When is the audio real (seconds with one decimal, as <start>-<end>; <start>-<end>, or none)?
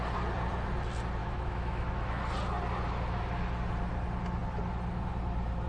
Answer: 0.0-1.2; 2.2-5.7